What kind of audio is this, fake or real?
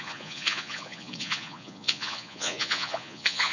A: fake